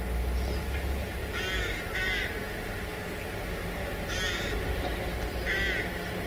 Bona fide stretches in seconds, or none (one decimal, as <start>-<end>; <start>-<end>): 0.0-6.3